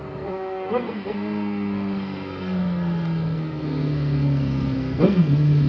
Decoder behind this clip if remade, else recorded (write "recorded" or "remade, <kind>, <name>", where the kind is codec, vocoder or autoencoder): remade, codec, SNAC